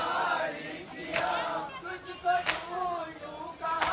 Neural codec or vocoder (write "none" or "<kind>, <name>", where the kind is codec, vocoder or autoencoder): none